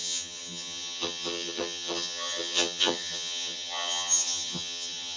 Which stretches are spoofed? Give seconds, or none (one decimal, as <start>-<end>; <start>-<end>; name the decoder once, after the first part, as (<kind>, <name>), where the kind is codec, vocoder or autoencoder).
0.0-5.2 (vocoder, HiFi-GAN)